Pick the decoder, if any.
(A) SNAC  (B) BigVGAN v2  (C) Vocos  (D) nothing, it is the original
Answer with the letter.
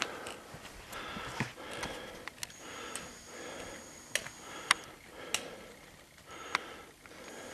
D